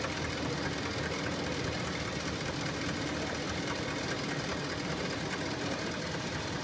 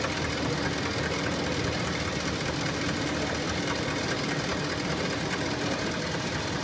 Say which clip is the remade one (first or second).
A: first